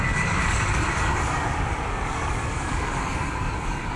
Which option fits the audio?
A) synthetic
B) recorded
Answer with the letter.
A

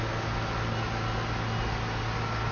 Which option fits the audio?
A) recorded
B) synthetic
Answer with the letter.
A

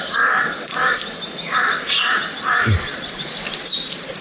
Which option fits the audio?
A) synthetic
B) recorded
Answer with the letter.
B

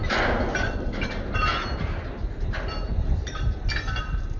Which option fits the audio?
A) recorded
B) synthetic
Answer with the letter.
A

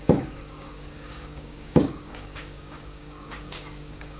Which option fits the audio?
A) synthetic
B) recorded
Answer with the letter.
A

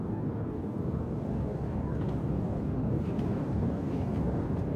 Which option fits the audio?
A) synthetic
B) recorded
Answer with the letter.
A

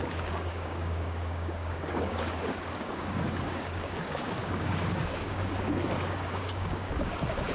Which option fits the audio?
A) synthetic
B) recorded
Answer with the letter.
A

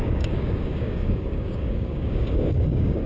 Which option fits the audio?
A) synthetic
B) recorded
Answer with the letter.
A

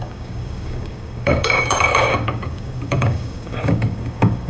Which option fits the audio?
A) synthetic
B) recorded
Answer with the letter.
A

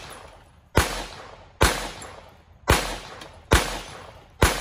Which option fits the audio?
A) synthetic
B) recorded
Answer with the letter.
B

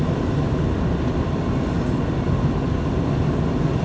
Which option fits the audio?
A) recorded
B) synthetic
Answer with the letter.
A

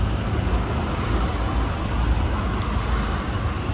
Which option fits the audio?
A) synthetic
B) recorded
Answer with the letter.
B